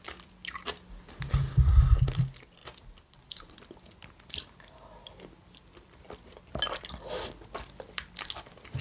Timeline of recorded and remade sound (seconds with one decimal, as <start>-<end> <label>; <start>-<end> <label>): 0.0-8.8 recorded